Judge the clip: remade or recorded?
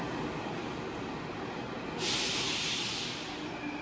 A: recorded